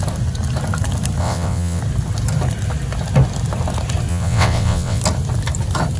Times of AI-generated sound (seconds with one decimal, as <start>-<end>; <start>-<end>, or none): 1.2-1.8; 4.1-5.0